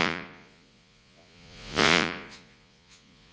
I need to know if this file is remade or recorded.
remade